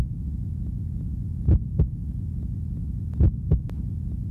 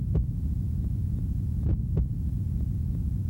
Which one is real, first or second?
first